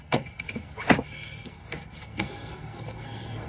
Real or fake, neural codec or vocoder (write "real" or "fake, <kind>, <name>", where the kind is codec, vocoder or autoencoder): fake, codec, SNAC